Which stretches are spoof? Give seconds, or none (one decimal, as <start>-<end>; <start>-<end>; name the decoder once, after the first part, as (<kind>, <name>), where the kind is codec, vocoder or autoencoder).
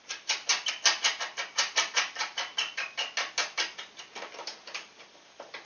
0.0-0.5 (vocoder, BigVGAN v2); 1.5-2.5; 4.3-5.7